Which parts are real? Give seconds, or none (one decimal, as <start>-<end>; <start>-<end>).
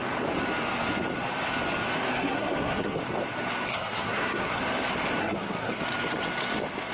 0.0-2.1; 3.0-3.7; 4.6-5.2; 5.8-6.9